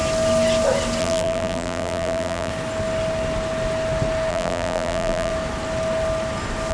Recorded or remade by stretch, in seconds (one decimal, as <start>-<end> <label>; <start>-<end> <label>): 0.0-1.0 recorded; 1.0-2.5 remade; 2.5-4.3 recorded; 4.3-5.3 remade; 5.3-6.7 recorded